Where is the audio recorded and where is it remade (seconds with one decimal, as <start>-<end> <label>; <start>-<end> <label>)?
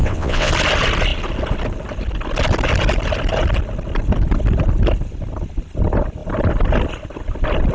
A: 0.0-0.5 remade; 0.5-7.7 recorded